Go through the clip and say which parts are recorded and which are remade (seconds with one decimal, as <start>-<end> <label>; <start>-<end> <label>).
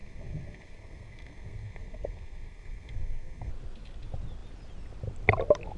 0.0-3.5 remade; 3.5-5.8 recorded